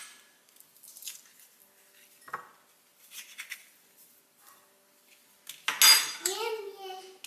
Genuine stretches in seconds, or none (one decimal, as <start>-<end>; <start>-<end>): 0.0-2.9; 4.2-7.3